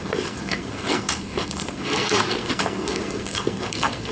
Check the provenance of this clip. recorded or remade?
remade